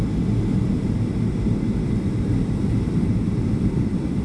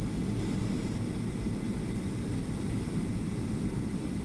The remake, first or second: first